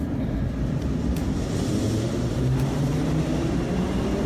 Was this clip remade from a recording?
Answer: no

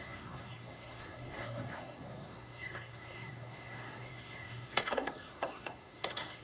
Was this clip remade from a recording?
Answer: yes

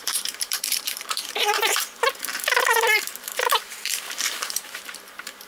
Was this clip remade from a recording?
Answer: yes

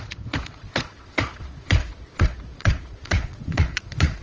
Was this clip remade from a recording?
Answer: yes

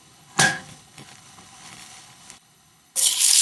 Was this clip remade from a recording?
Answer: yes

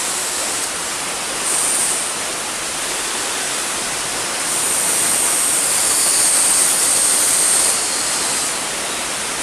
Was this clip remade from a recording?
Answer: no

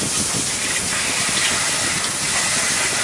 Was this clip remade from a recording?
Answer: no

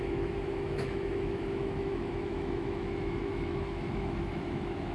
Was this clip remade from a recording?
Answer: yes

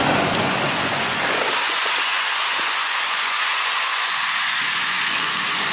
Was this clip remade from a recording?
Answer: yes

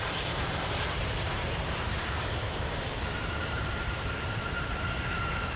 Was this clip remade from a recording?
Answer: yes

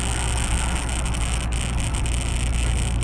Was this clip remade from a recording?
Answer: no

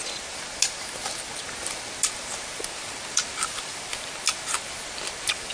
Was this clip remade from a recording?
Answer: no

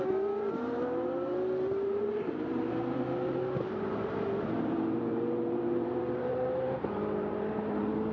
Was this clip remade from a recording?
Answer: yes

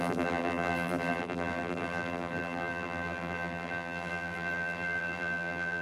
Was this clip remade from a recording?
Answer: yes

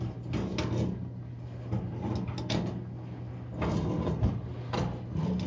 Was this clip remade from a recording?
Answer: no